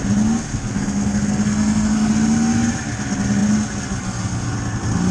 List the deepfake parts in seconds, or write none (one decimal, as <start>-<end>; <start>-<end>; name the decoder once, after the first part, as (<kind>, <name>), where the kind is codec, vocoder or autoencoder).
0.5-2.1 (codec, SNAC)